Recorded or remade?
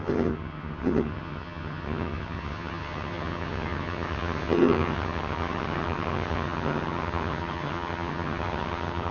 remade